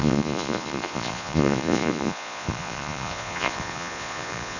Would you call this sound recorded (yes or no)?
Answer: no